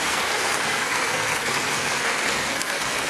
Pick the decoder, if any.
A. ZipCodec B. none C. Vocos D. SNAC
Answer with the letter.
D